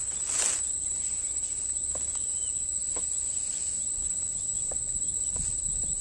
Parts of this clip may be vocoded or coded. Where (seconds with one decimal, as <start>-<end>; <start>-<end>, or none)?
none